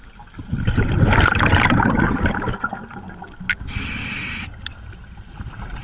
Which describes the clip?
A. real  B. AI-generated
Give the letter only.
A